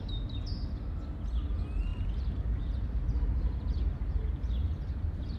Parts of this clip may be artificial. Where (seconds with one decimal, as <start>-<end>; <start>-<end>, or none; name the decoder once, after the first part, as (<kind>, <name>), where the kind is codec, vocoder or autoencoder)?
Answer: 1.9-5.4 (vocoder, BigVGAN v2)